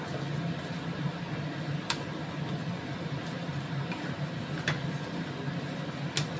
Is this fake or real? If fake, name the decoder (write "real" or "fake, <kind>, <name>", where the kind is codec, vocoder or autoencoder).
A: real